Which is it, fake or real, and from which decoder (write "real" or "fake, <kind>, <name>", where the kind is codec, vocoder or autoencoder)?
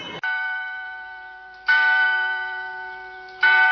real